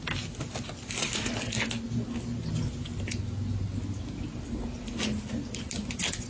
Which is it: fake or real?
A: real